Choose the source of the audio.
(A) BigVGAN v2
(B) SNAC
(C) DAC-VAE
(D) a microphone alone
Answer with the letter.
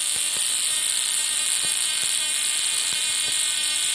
C